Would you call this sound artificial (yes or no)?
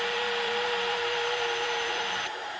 yes